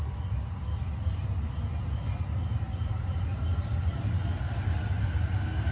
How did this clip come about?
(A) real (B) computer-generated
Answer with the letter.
A